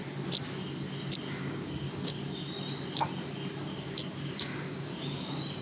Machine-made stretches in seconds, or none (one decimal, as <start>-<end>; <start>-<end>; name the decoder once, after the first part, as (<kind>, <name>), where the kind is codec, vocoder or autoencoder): 1.4-2.2 (codec, DAC); 3.7-5.6